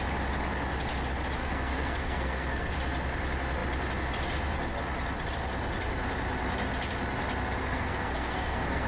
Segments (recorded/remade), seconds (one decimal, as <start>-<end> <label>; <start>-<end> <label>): 0.0-1.4 recorded; 1.4-2.7 remade; 2.7-7.6 recorded; 7.6-8.9 remade